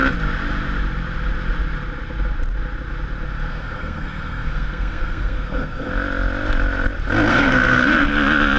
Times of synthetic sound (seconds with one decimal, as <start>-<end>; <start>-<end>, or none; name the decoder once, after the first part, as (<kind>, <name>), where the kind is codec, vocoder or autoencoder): 3.5-5.9 (codec, SNAC); 7.3-8.1